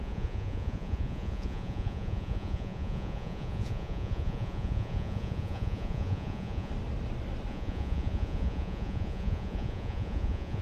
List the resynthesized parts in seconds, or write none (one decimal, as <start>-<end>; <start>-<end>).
0.0-6.7; 7.5-10.6